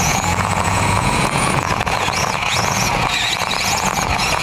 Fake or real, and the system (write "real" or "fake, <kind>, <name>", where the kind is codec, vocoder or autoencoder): fake, vocoder, Vocos